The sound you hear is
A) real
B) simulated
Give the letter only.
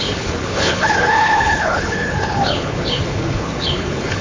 B